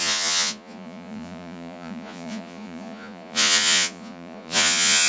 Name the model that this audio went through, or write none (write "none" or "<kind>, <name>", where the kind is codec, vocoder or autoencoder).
vocoder, Vocos